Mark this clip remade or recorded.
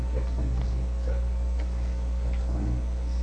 remade